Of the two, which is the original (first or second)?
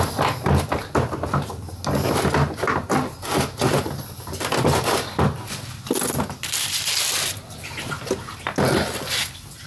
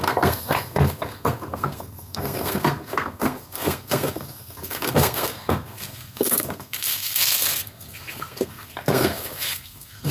first